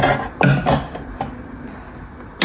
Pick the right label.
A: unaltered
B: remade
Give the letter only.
A